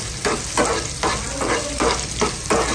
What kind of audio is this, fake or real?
real